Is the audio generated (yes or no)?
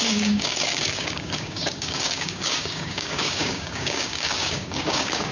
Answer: yes